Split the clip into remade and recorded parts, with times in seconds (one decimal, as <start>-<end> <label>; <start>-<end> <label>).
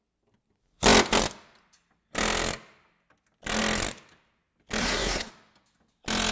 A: 0.0-4.8 recorded; 4.8-5.3 remade; 5.3-6.3 recorded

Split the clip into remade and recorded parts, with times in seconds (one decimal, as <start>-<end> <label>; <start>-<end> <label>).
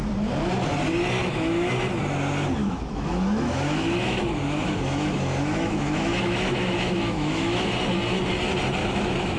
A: 0.0-1.2 recorded; 1.2-1.7 remade; 1.7-2.6 recorded; 2.6-7.7 remade; 7.7-8.8 recorded; 8.8-9.4 remade